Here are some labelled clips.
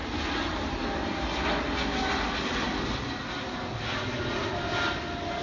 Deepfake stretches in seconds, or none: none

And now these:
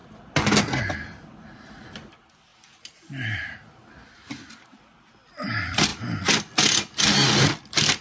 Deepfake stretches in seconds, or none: none

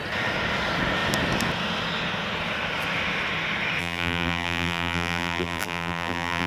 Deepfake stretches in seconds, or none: 3.8-6.5 (vocoder, BigVGAN v2)

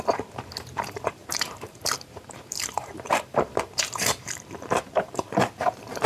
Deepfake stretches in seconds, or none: 0.0-6.1 (vocoder, BigVGAN v2)

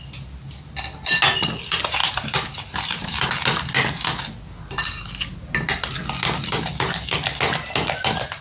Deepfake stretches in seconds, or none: 2.0-3.3 (vocoder, BigVGAN v2)

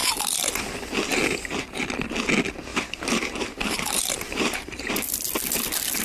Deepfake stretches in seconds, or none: 0.0-0.6 (vocoder, BigVGAN v2); 2.7-4.9